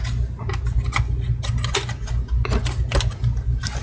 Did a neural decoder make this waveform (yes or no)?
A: no